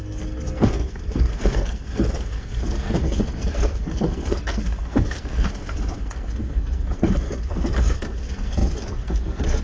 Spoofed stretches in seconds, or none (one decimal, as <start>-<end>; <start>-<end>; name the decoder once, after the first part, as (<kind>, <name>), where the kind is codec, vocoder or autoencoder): 0.0-9.6 (codec, SNAC)